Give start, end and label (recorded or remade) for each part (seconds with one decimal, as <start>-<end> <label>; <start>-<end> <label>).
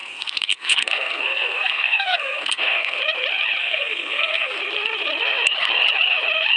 0.0-3.0 remade; 3.0-3.6 recorded; 3.6-4.6 remade; 4.6-6.6 recorded